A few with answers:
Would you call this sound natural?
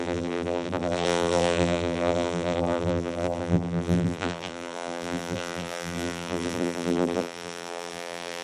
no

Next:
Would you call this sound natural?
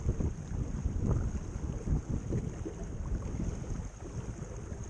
yes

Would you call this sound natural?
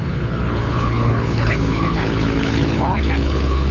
no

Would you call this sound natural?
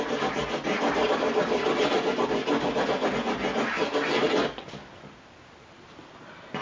yes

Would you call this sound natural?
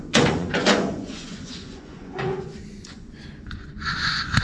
no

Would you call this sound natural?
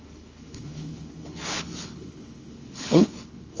no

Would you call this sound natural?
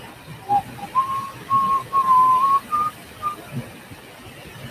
yes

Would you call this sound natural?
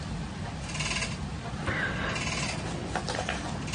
yes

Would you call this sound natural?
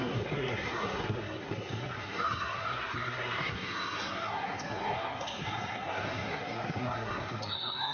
no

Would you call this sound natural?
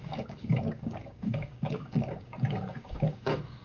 no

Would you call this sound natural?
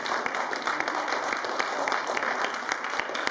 yes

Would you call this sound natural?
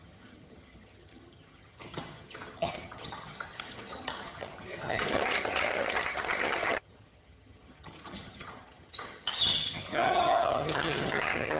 no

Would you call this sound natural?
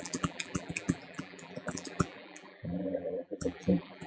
no